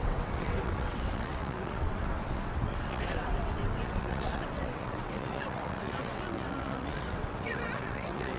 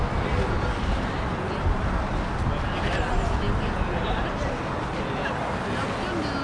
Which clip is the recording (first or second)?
second